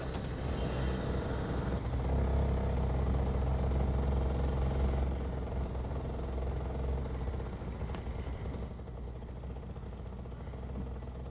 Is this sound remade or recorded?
recorded